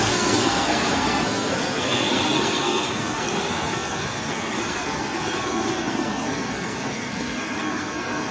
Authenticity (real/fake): fake